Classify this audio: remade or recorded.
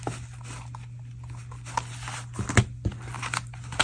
recorded